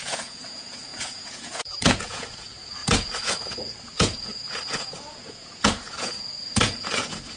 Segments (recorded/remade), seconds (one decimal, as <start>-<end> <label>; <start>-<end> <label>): 0.0-7.4 remade